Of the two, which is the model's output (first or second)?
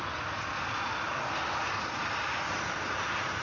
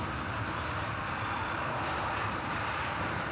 second